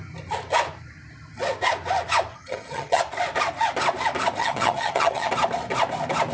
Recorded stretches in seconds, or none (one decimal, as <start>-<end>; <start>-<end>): 0.0-2.3; 3.0-4.4; 5.3-6.3